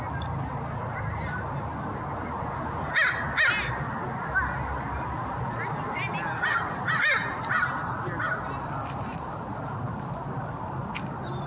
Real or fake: real